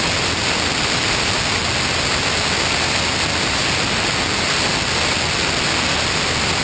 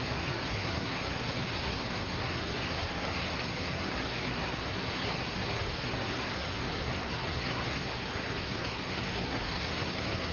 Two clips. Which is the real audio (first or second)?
first